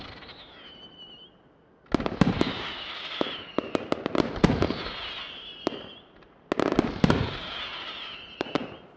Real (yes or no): yes